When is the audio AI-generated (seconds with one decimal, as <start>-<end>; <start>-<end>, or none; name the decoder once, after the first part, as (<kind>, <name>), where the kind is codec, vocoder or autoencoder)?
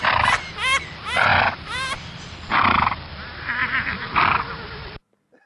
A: 1.3-3.1 (vocoder, BigVGAN v2); 3.6-4.2